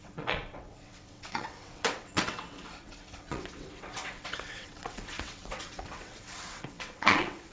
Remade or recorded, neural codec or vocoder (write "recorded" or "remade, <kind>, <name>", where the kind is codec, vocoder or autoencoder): remade, vocoder, WaveNeXt